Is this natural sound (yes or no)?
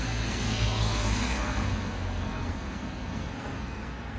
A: no